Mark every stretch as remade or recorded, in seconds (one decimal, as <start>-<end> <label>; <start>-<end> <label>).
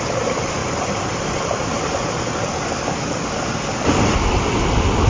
0.0-5.1 recorded